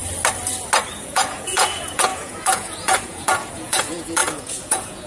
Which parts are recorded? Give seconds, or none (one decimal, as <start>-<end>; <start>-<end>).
0.0-0.9

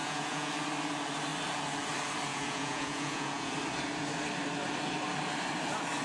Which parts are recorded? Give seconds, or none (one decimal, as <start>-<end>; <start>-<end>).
0.5-2.3; 3.5-6.0

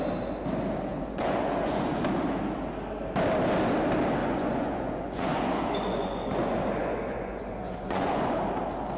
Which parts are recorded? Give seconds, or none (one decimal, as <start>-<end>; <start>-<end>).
0.0-0.9; 2.0-4.2; 8.3-9.0